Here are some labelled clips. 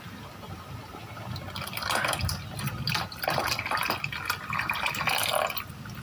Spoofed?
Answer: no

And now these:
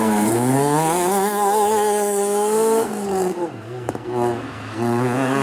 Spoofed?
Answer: yes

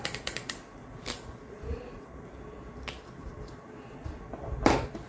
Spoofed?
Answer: no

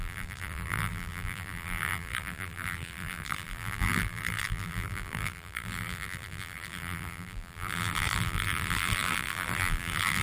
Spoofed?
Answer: yes